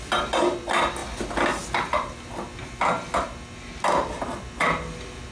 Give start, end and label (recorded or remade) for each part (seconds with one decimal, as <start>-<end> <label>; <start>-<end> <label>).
0.0-5.3 recorded